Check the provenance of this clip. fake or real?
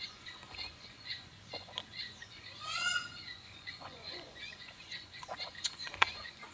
fake